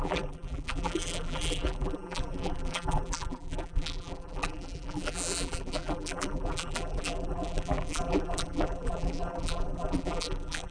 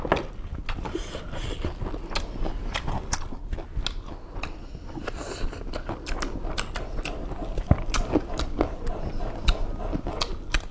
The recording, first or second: second